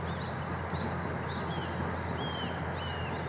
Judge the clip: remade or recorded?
recorded